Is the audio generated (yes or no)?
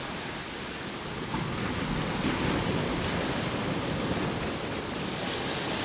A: no